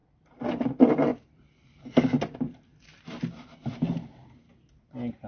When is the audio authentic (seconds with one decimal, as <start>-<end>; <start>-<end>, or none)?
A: 0.0-5.3